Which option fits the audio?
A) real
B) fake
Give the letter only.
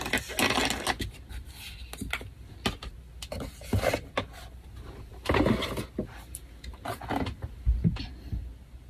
A